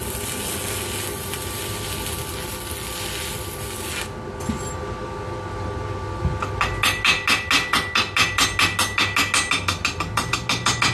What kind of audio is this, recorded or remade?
recorded